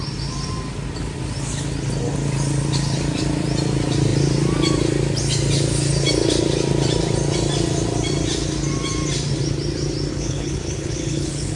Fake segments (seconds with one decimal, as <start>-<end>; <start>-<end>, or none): 10.1-11.6